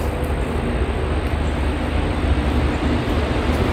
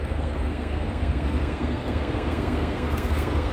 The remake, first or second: second